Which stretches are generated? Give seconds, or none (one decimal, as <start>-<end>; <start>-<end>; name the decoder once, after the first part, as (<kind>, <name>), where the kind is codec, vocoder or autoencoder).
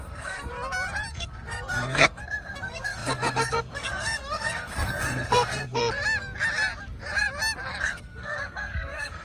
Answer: 0.0-0.5 (codec, SNAC); 1.1-5.8; 7.8-9.2